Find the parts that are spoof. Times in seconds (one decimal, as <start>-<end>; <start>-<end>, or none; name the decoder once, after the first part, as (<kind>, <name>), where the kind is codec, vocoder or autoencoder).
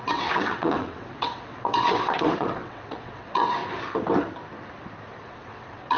0.0-3.6 (vocoder, WaveNeXt); 5.3-6.0